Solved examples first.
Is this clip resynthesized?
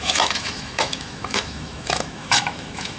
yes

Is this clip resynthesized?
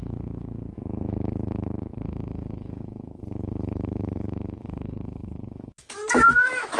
yes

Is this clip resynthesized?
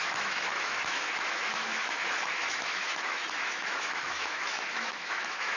yes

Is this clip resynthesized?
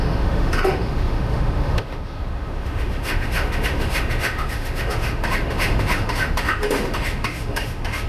yes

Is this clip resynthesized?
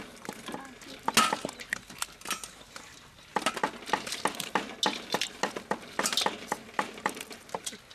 no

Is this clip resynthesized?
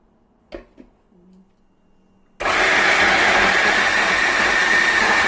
no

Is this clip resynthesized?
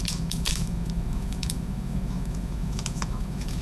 yes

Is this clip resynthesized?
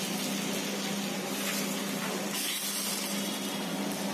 no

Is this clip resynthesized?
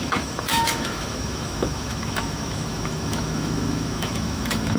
yes